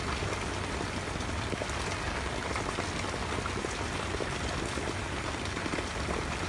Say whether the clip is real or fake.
real